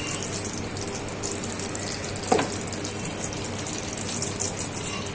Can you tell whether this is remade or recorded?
recorded